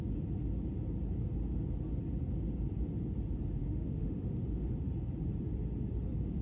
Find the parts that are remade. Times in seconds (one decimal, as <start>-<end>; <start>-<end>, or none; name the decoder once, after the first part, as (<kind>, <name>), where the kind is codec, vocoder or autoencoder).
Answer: 3.6-4.7 (autoencoder, DAC-VAE)